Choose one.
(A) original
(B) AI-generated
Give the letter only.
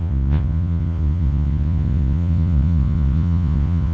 B